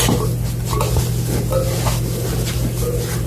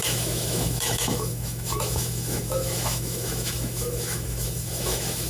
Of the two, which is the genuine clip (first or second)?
first